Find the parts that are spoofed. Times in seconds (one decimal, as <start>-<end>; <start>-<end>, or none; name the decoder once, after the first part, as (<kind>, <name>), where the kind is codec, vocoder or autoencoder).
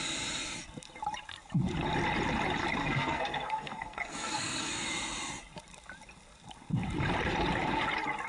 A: 2.8-4.7 (codec, SNAC)